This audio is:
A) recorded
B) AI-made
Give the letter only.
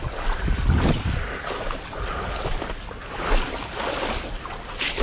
A